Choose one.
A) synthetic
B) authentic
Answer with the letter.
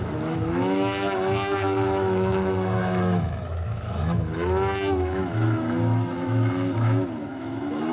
A